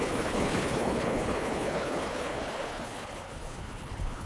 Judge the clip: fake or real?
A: fake